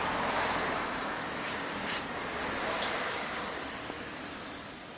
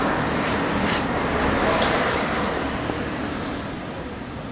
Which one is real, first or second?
second